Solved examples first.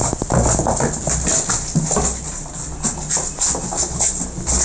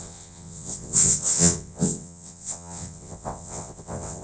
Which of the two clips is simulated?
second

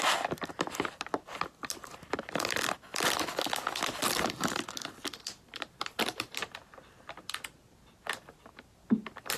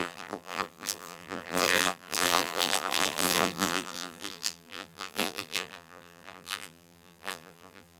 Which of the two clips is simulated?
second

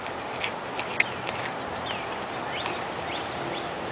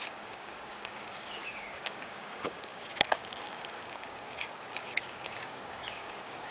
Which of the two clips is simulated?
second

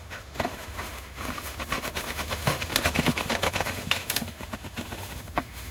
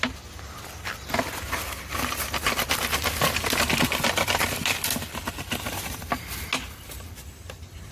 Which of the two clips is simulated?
first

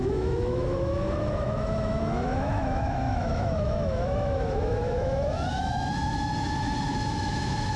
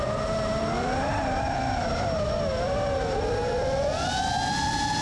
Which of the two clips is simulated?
first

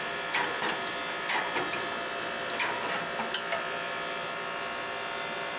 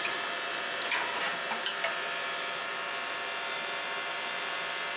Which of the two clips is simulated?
second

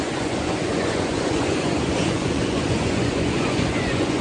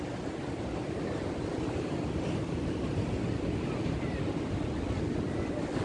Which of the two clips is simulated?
first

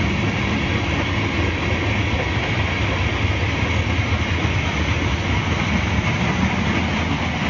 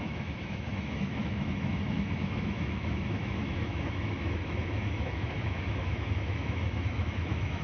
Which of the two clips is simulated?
second